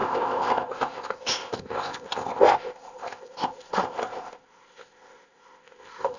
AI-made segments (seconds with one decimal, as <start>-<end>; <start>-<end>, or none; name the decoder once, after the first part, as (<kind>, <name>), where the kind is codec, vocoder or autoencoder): 0.0-6.2 (codec, ZipCodec)